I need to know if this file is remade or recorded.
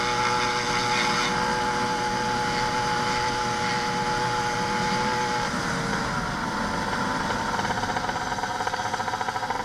recorded